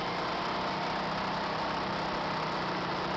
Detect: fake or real real